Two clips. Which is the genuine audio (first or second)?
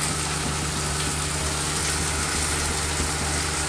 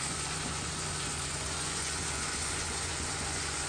first